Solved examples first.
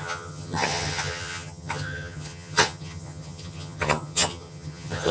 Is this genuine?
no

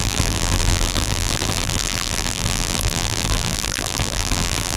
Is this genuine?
no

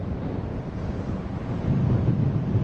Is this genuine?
yes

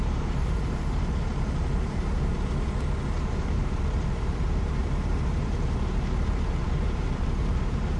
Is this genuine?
no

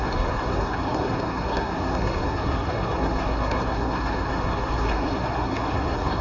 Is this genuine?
no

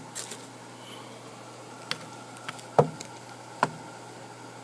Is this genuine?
yes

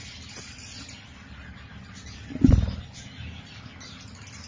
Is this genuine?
yes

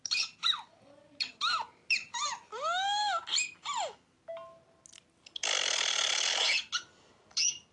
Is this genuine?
yes